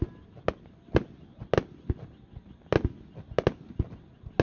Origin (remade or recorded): recorded